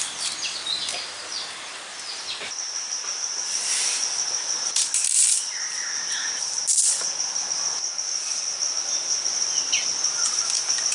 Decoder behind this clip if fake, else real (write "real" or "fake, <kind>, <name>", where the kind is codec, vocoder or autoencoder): real